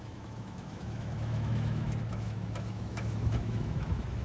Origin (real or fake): fake